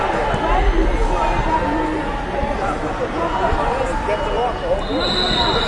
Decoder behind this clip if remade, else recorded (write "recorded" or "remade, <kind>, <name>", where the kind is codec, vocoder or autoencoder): recorded